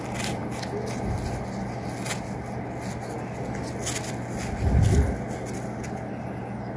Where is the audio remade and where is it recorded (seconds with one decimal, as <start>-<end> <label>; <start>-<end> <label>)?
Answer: 0.0-6.8 recorded